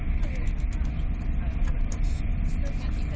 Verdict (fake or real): real